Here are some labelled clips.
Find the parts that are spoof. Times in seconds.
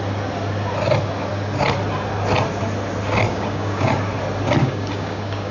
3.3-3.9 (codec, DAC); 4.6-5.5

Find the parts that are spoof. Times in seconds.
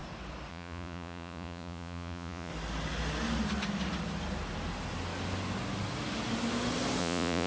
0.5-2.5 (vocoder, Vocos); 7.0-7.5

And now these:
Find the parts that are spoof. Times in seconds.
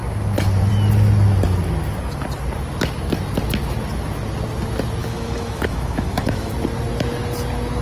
5.0-6.5 (autoencoder, DAC-VAE)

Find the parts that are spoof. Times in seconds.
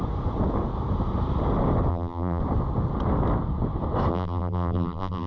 1.9-2.4 (vocoder, BigVGAN v2); 4.1-5.3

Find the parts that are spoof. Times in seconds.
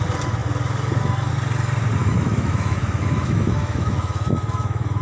2.0-5.0 (autoencoder, DAC-VAE)